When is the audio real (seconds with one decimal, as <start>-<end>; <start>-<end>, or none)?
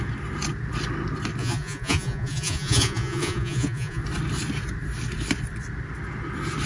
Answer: 0.0-1.4; 4.0-6.7